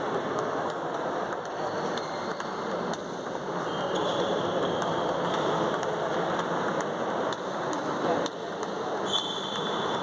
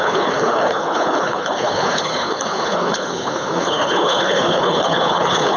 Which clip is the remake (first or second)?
second